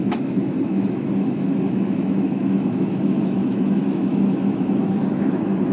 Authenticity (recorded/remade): remade